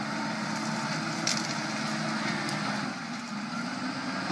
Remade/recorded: recorded